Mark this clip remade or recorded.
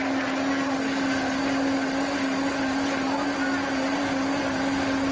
recorded